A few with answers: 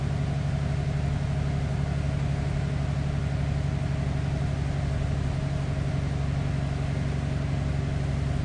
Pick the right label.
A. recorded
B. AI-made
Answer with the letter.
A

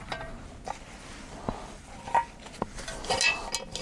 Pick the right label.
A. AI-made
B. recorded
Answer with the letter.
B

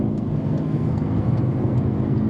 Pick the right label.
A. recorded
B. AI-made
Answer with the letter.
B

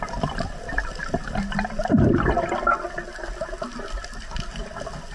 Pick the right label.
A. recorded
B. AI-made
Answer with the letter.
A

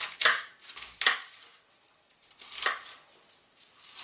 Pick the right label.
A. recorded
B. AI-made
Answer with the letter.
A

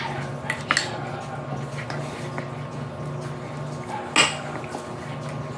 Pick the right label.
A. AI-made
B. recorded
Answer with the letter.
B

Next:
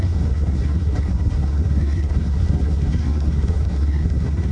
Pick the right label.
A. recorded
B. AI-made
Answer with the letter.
B